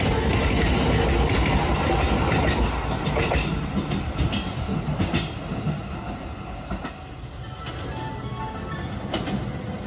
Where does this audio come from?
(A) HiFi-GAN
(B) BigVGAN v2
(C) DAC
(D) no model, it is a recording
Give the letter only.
D